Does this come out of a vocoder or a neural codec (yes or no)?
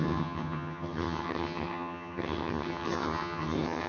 yes